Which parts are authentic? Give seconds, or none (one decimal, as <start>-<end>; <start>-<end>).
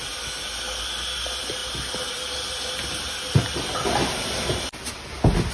0.0-5.5